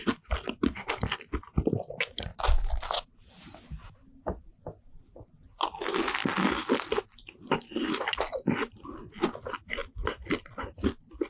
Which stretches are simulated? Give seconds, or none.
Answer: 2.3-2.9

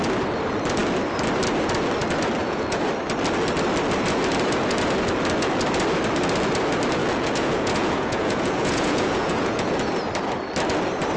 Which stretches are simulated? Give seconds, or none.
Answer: 2.4-2.9; 7.0-9.7

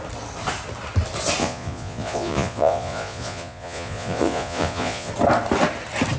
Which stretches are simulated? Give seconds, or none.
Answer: 1.4-5.1

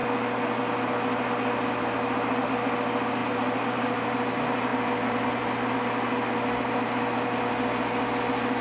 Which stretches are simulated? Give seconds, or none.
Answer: 3.2-4.1

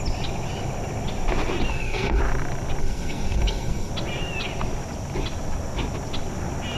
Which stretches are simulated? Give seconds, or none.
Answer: 1.7-2.2; 2.8-3.9

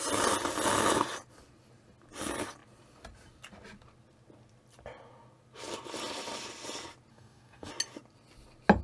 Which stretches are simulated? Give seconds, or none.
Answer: 7.1-7.7

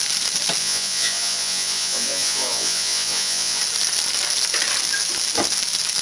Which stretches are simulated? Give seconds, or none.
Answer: 0.6-3.6

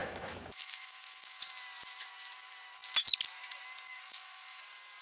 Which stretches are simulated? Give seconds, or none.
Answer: 0.0-1.4; 3.9-4.6